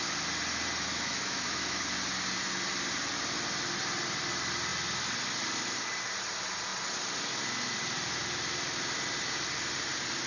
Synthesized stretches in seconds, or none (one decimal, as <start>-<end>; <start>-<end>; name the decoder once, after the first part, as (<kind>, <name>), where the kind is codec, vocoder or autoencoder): 0.9-1.9 (autoencoder, DAC-VAE)